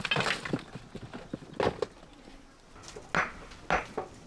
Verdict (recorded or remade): recorded